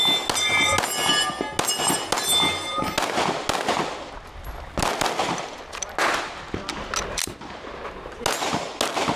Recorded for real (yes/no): yes